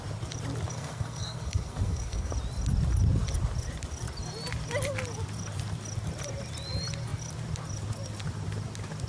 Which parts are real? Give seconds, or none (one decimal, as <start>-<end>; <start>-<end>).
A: 0.0-0.7; 2.3-9.1